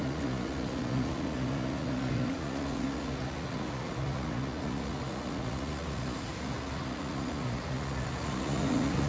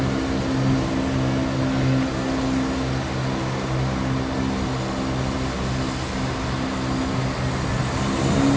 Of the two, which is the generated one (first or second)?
first